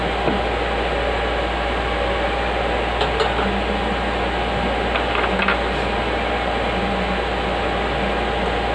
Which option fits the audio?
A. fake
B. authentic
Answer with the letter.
B